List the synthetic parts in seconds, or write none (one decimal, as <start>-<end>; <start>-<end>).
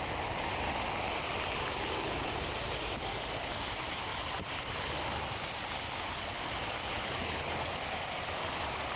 none